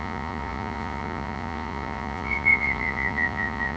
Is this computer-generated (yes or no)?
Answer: yes